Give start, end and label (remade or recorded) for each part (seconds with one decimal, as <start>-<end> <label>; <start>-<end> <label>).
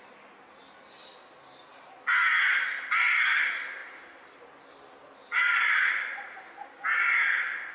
0.0-7.7 recorded